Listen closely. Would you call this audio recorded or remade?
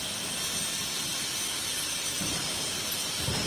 recorded